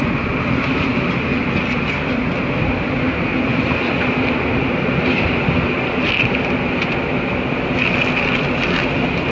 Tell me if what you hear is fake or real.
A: real